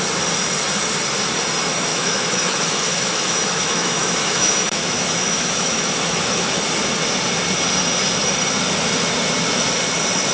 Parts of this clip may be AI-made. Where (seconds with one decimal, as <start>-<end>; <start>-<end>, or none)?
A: 1.9-6.6